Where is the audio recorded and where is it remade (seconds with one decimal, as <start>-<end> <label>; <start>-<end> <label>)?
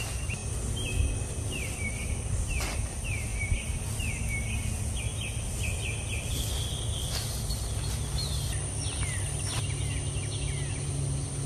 0.0-11.5 recorded